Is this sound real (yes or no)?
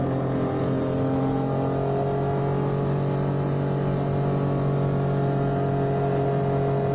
yes